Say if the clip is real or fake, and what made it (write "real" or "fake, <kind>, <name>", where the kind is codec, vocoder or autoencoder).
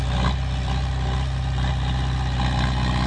real